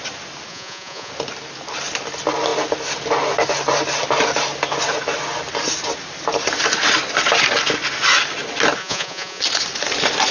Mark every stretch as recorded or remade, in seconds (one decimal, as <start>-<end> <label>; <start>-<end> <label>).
0.0-0.5 recorded; 0.5-1.1 remade; 1.1-8.8 recorded; 8.8-9.4 remade; 9.4-10.3 recorded